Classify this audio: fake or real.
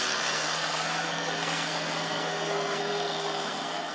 fake